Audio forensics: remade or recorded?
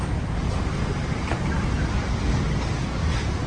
recorded